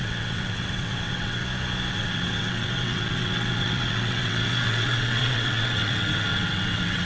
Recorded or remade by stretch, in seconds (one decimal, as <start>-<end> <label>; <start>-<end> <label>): 0.0-1.4 remade; 1.4-1.9 recorded; 1.9-7.0 remade